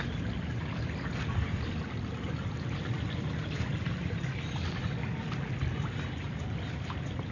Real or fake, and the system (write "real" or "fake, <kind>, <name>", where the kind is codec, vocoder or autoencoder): real